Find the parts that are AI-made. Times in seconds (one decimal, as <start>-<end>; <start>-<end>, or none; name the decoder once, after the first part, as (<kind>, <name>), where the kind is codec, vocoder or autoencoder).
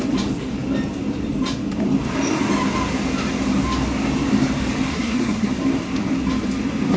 4.9-5.5 (codec, SNAC)